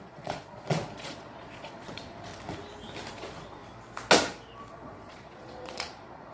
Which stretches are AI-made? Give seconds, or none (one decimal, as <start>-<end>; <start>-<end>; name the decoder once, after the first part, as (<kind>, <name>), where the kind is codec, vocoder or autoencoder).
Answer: 0.0-2.3 (vocoder, Vocos); 3.1-3.6; 4.7-6.3